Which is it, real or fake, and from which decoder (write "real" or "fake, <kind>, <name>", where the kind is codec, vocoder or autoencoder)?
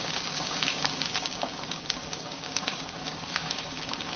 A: fake, codec, DAC